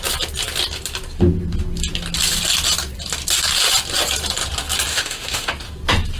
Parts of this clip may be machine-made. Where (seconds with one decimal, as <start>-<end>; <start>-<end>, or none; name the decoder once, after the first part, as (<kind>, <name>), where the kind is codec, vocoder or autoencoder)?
4.9-5.5 (autoencoder, DAC-VAE)